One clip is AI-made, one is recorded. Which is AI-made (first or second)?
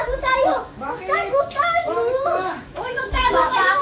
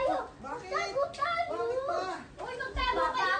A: first